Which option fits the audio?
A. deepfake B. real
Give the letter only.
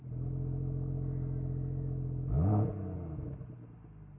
B